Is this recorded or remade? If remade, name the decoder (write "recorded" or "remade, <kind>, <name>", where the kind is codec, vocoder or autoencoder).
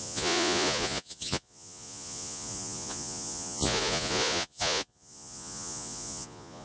remade, vocoder, Vocos